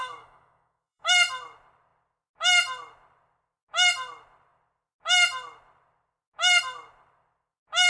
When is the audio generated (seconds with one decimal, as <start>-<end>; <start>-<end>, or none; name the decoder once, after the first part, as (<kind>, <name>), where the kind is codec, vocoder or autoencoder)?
0.0-1.1 (autoencoder, DAC-VAE)